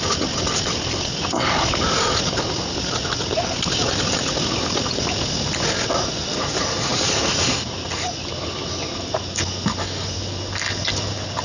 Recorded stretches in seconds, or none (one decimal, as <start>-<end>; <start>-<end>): 0.0-11.4